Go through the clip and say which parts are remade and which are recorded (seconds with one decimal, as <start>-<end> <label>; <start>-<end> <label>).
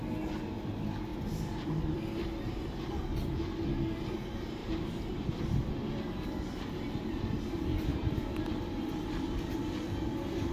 0.0-1.1 recorded; 1.1-2.9 remade; 2.9-4.6 recorded; 4.6-7.2 remade; 7.2-7.9 recorded; 7.9-9.1 remade; 9.1-10.5 recorded